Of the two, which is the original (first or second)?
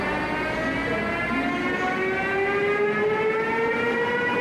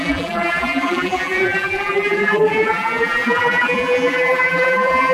first